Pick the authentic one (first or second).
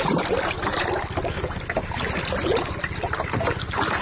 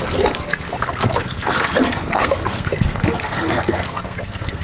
first